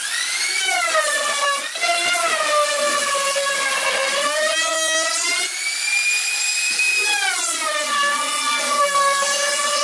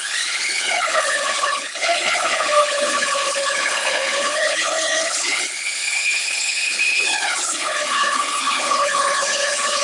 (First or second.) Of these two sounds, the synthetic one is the second